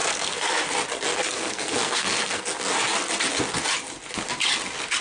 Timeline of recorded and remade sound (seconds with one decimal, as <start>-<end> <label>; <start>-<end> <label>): 0.0-0.6 remade; 0.6-1.1 recorded; 1.1-2.4 remade; 2.4-5.0 recorded